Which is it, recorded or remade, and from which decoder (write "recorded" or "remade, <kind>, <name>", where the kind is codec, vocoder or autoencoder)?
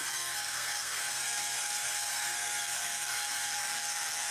remade, codec, SNAC